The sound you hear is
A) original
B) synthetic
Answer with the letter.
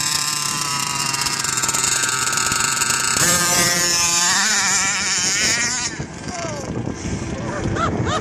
B